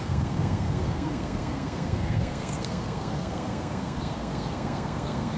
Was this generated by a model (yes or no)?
yes